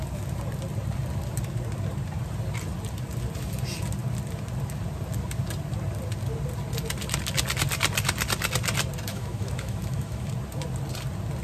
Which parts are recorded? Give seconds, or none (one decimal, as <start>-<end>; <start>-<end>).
0.0-9.1; 10.3-11.4